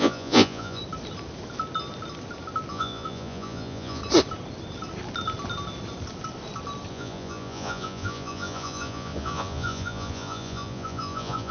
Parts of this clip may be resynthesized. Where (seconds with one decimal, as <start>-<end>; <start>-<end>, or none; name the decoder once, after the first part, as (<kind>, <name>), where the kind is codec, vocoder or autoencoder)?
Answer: 0.0-0.8 (vocoder, Vocos); 2.7-4.0; 6.9-11.5